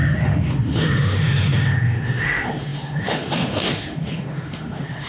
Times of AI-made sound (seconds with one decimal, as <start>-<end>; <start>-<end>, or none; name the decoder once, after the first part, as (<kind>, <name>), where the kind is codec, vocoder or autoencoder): 0.0-5.1 (autoencoder, DAC-VAE)